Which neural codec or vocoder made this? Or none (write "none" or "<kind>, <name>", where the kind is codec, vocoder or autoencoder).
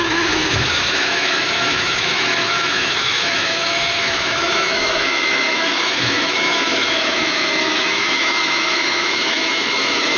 autoencoder, DAC-VAE